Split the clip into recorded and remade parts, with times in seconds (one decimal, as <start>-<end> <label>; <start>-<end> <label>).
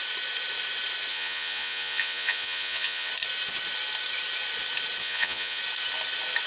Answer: 0.0-1.1 recorded; 1.1-3.1 remade; 3.1-5.0 recorded; 5.0-5.6 remade; 5.6-6.5 recorded